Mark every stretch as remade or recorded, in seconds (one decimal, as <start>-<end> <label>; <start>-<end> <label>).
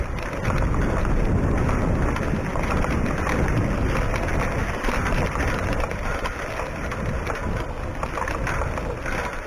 0.0-9.5 recorded